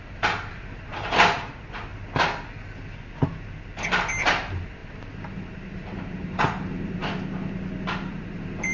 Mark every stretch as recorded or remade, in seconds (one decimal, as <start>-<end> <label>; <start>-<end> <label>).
0.0-1.9 remade; 1.9-4.2 recorded; 4.2-7.0 remade; 7.0-8.1 recorded; 8.1-8.7 remade